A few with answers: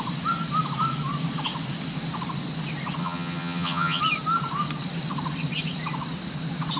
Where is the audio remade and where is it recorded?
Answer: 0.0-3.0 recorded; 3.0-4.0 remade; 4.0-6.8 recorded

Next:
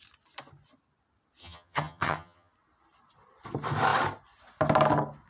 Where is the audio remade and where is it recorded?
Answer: 0.0-1.4 recorded; 1.4-2.5 remade; 2.5-5.3 recorded

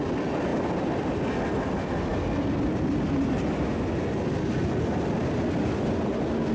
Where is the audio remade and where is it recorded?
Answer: 0.0-6.5 recorded

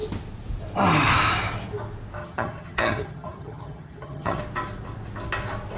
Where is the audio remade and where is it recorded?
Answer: 0.0-2.2 recorded; 2.2-4.4 remade; 4.4-5.8 recorded